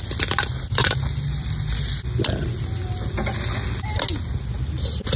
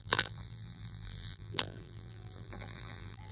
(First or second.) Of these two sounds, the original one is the first